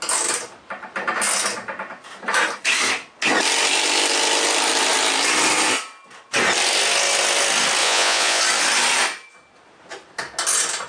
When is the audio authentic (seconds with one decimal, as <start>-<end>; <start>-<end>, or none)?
0.0-7.8; 8.4-10.9